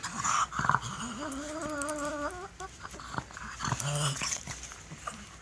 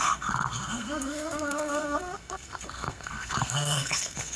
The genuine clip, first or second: first